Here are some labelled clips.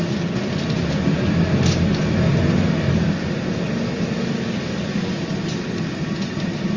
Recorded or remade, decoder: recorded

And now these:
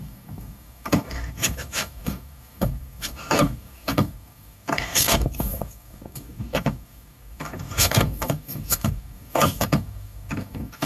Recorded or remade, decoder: remade, codec, DAC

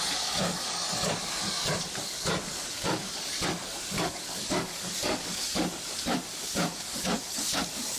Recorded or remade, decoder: remade, codec, DAC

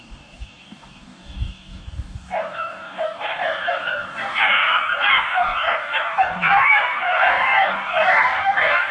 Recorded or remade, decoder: remade, codec, DAC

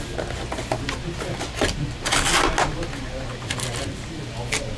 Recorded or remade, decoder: recorded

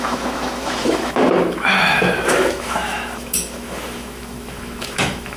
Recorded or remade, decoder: remade, autoencoder, DAC-VAE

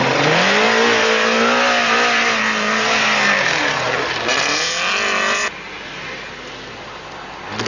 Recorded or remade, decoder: recorded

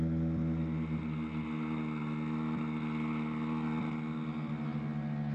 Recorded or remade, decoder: recorded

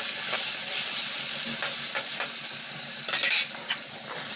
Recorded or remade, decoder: recorded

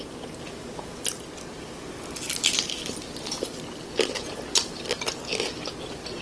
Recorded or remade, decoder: recorded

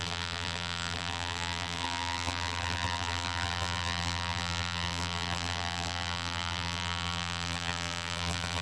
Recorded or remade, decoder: remade, vocoder, BigVGAN v2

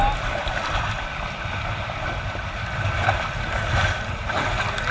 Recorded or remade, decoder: recorded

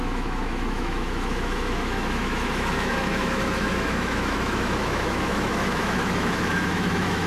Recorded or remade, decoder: remade, autoencoder, DAC-VAE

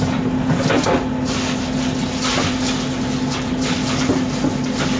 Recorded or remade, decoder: recorded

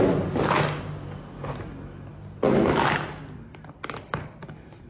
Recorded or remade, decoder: recorded